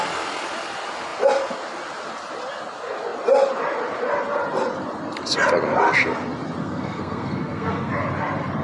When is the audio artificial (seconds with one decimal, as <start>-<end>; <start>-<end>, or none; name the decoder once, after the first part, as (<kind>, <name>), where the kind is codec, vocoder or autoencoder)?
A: 6.6-7.9 (codec, SNAC)